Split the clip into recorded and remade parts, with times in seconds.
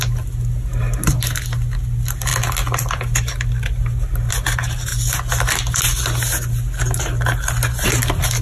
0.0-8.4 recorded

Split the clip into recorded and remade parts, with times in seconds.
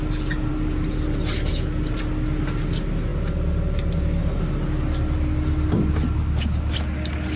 0.0-7.4 recorded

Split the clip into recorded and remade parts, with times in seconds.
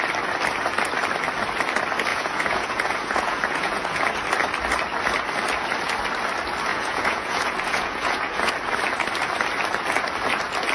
0.0-2.1 recorded; 2.1-4.0 remade; 4.0-6.7 recorded; 6.7-8.5 remade; 8.5-10.7 recorded